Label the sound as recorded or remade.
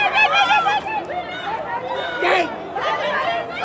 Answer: recorded